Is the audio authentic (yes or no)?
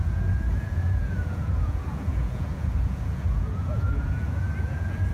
no